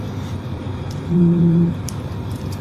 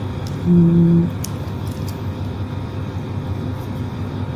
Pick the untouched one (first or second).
second